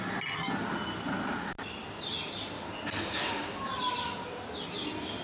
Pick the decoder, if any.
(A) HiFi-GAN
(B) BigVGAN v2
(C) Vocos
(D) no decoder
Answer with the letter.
D